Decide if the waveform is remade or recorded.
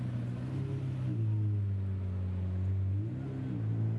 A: recorded